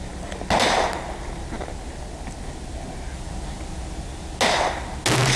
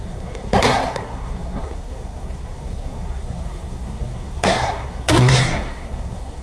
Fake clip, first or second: second